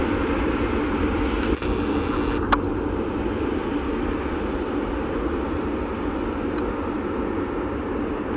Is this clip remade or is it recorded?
recorded